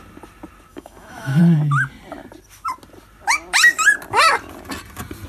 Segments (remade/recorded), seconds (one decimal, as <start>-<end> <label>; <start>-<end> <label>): 0.0-0.7 recorded; 0.7-1.4 remade; 1.4-5.3 recorded